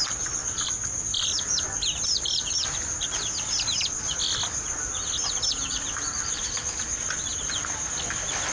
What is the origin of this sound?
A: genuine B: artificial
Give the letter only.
B